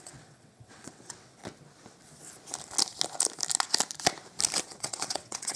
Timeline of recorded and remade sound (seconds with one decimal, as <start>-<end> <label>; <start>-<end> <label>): 0.0-1.4 remade; 1.4-4.6 recorded; 4.6-5.6 remade